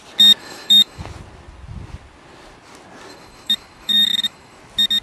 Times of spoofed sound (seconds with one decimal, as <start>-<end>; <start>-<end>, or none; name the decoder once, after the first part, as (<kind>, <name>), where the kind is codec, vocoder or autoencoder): 0.4-1.0 (autoencoder, DAC-VAE); 3.1-4.6